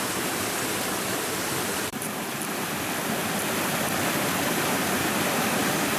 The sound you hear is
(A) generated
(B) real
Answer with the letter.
A